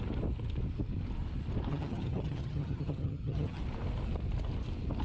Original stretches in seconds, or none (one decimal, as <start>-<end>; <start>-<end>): 0.0-1.7; 3.6-5.0